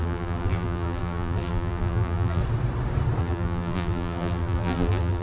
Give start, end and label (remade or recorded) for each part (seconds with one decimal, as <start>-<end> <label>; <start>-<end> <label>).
0.0-2.4 remade; 2.4-3.2 recorded; 3.2-5.2 remade